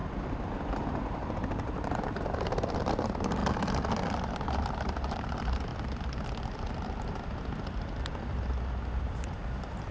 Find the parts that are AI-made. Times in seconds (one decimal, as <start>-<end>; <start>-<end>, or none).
1.0-3.4; 4.3-5.7; 9.0-9.9

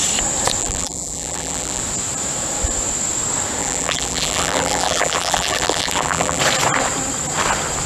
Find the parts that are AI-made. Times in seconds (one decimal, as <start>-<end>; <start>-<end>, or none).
0.6-1.8; 3.6-6.4